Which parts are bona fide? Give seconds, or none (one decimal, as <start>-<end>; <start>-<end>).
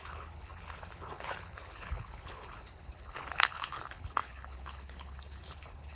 none